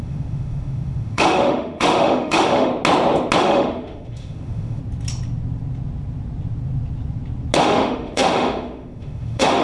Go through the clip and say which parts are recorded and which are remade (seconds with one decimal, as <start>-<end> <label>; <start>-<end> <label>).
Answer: 0.0-2.7 remade; 2.7-3.4 recorded; 3.4-4.8 remade; 4.8-7.6 recorded; 7.6-9.6 remade